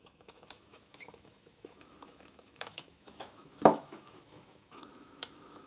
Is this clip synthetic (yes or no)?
yes